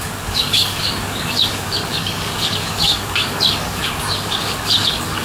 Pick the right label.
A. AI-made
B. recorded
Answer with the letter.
A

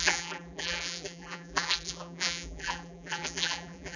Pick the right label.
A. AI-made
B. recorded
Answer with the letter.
A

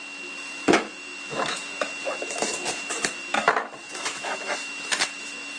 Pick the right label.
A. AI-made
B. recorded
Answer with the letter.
A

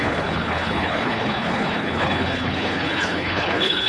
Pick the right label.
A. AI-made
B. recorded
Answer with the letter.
A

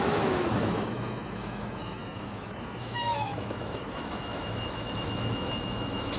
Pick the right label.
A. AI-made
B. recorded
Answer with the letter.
A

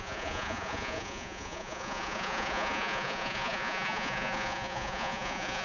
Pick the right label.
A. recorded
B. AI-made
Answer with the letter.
B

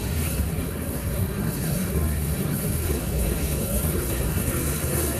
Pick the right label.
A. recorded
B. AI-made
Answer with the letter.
B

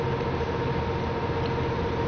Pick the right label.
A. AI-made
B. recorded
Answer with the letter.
B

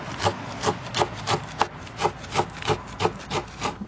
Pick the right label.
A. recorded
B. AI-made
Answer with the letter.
A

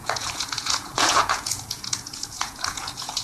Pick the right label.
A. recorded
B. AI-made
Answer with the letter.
B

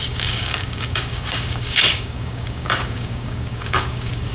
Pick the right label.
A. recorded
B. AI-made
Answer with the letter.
B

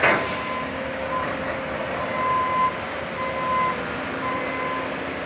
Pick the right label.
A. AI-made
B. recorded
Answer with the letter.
B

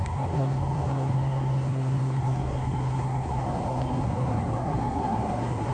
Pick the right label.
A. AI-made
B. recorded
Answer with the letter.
A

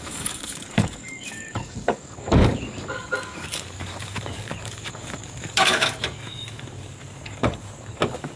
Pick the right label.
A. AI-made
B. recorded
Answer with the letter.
A